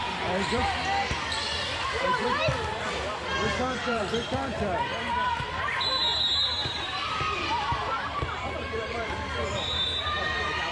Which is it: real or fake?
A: fake